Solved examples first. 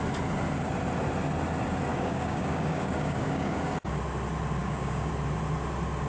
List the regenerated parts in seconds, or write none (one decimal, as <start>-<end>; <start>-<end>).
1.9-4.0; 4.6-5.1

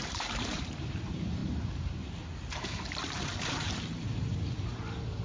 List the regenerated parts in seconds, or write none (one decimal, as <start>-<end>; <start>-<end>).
0.0-5.2

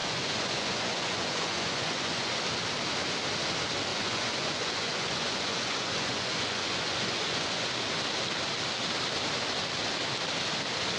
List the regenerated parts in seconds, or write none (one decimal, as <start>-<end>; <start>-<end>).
0.0-2.4; 3.9-7.7

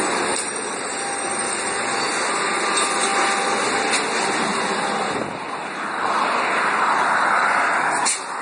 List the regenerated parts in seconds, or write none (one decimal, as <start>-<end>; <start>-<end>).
none